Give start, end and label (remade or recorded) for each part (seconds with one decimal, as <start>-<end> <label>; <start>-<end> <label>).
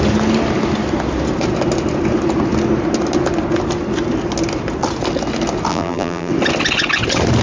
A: 0.0-5.7 recorded; 5.7-6.3 remade; 6.3-7.4 recorded